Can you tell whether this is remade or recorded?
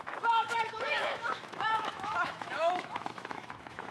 remade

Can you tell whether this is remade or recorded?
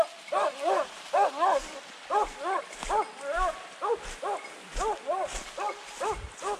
recorded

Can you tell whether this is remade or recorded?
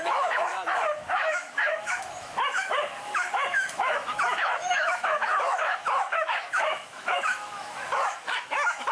remade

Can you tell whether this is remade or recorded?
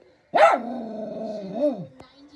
recorded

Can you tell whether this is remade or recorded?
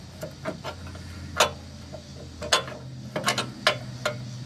recorded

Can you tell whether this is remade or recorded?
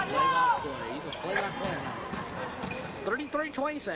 recorded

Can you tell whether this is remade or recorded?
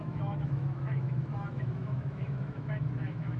remade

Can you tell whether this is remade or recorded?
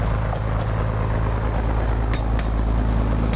recorded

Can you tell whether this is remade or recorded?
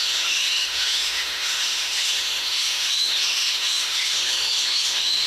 remade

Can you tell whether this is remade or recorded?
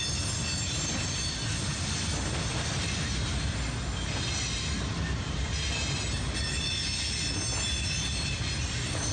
recorded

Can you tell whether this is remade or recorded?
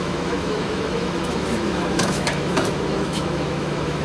remade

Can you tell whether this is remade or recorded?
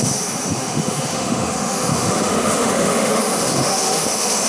remade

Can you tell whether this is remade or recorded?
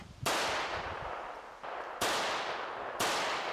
recorded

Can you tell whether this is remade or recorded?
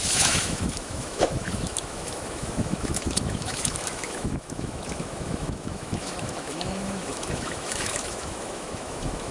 remade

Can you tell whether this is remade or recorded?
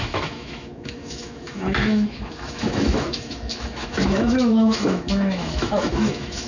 remade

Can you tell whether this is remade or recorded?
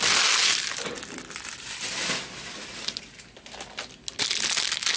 recorded